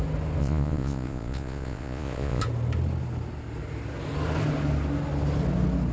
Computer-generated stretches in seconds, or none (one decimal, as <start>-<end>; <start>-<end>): 0.4-2.4